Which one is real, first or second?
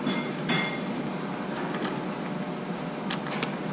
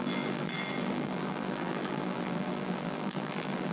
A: first